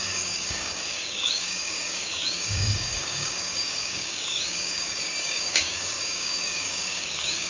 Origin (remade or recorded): remade